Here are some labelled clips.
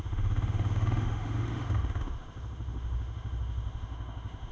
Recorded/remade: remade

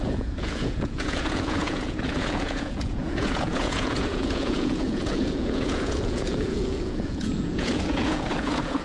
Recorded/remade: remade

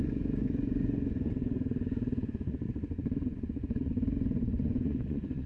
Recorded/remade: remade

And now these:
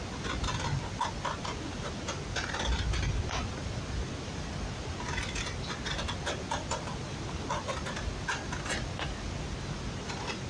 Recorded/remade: recorded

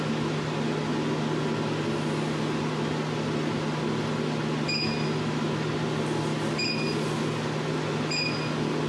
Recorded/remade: recorded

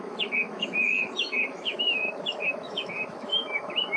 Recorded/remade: remade